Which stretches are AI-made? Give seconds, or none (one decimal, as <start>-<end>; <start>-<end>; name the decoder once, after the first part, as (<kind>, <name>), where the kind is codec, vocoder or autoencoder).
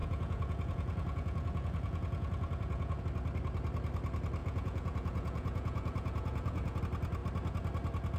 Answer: 0.0-3.0 (vocoder, Vocos); 4.4-6.8